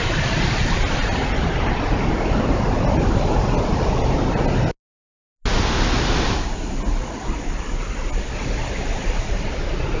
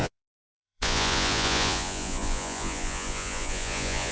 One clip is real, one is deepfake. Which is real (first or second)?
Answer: first